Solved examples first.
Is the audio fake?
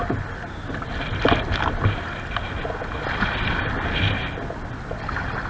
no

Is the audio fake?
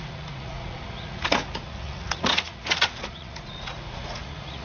yes